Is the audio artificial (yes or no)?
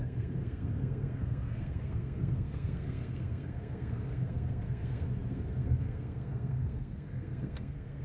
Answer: yes